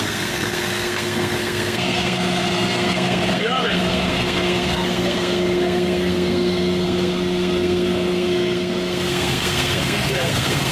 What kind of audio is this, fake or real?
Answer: fake